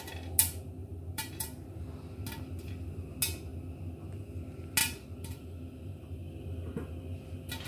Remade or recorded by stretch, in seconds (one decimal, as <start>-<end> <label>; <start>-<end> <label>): 0.0-0.8 recorded; 0.8-1.8 remade; 1.8-4.8 recorded; 4.8-6.3 remade; 6.3-7.7 recorded